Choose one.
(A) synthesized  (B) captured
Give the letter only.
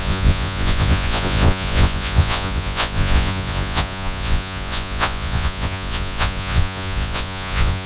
A